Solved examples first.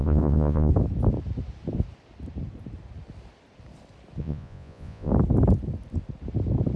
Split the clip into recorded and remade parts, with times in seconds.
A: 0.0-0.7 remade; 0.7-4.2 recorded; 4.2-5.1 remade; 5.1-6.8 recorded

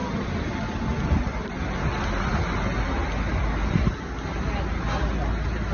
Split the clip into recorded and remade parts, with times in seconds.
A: 0.0-5.7 recorded

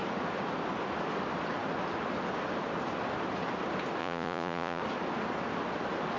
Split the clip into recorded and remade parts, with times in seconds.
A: 0.0-4.0 recorded; 4.0-4.8 remade; 4.8-6.2 recorded

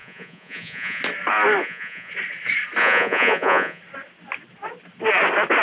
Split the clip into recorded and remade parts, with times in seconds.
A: 0.0-1.0 remade; 1.0-1.6 recorded; 1.6-2.1 remade; 2.1-2.8 recorded; 2.8-3.8 remade; 3.8-5.6 recorded

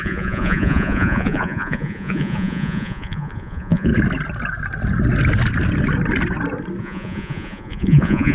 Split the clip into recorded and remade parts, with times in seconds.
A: 0.0-3.9 remade; 3.9-6.8 recorded; 6.8-8.3 remade

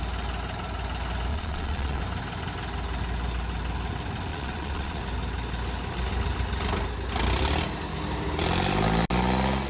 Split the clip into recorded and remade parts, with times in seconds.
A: 0.0-1.3 recorded; 1.3-2.0 remade; 2.0-4.3 recorded; 4.3-5.0 remade; 5.0-9.7 recorded

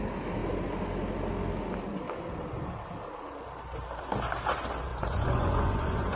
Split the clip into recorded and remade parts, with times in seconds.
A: 0.0-4.9 recorded; 4.9-6.2 remade